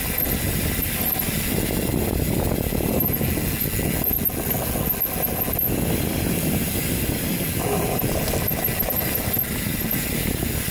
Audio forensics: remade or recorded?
recorded